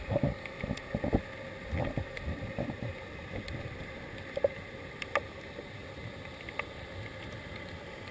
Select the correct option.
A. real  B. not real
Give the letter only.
A